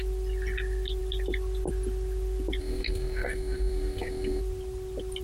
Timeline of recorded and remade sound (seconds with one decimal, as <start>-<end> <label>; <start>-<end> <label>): 0.0-2.6 recorded; 2.6-4.4 remade; 4.4-5.2 recorded